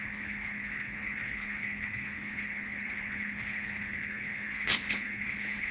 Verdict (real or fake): fake